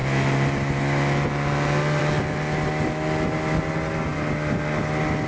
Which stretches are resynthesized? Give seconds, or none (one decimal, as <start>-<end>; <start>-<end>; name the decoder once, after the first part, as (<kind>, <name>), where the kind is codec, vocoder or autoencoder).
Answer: none